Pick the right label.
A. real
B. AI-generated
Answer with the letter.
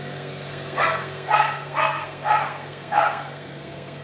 B